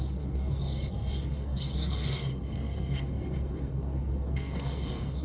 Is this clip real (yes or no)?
no